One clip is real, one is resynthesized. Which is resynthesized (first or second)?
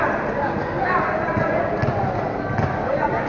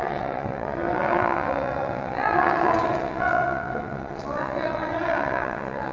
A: second